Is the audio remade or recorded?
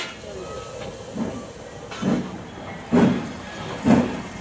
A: recorded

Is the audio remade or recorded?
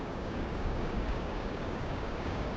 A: remade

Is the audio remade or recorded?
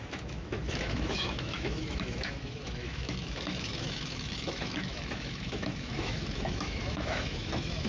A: remade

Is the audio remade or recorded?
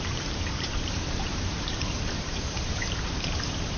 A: remade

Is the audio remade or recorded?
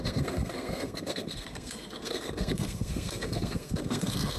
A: remade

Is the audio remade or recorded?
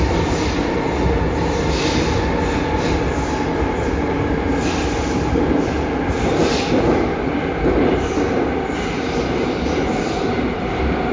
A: recorded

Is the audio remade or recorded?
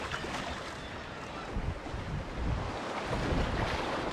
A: recorded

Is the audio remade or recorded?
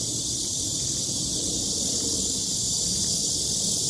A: recorded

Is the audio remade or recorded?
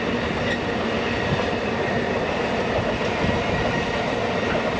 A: recorded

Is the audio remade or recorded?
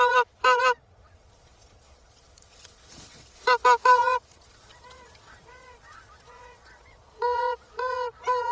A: remade